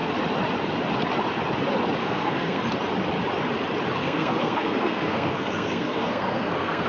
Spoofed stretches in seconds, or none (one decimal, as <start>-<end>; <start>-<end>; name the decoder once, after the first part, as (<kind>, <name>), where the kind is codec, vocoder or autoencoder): 2.0-2.6 (codec, SNAC); 4.0-6.9